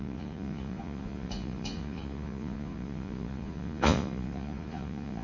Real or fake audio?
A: fake